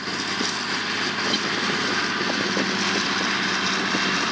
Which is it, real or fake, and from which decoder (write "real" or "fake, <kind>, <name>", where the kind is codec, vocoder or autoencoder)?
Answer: real